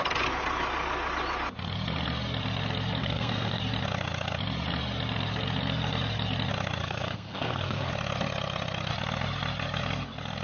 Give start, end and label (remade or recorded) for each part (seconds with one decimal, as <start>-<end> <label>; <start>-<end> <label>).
0.0-3.0 recorded; 3.0-3.6 remade; 3.6-6.8 recorded; 6.8-7.9 remade; 7.9-10.4 recorded